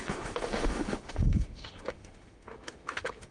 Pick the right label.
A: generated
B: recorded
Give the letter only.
A